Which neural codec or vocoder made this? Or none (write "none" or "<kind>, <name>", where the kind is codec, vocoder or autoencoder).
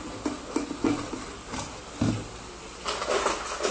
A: none